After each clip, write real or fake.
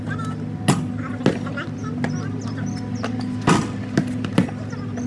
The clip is real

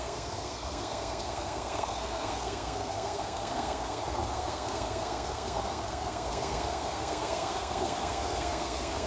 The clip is fake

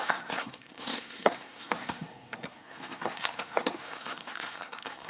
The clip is fake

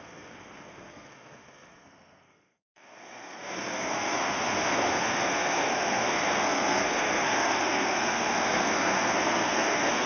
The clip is fake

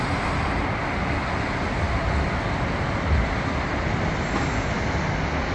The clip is real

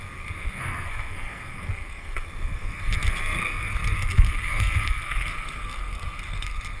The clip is fake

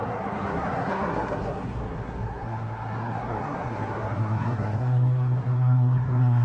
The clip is fake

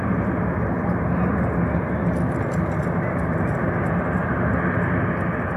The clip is real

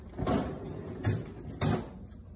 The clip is real